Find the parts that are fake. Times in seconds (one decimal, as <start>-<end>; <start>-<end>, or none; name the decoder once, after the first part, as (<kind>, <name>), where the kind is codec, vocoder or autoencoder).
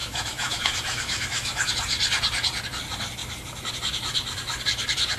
0.0-1.7 (autoencoder, DAC-VAE)